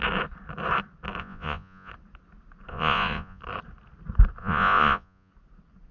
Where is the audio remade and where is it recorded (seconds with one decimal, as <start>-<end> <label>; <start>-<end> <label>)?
0.0-1.2 recorded; 1.2-1.9 remade; 1.9-2.7 recorded; 2.7-3.4 remade; 3.4-4.4 recorded; 4.4-5.3 remade; 5.3-5.9 recorded